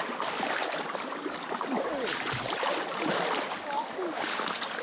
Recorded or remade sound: recorded